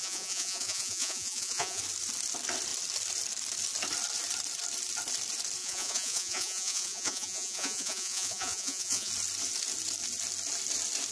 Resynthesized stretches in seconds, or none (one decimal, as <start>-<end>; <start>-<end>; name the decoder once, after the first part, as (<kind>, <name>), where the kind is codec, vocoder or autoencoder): 0.0-1.8 (vocoder, Vocos); 5.6-9.1